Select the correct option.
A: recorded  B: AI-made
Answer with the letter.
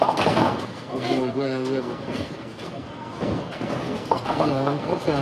B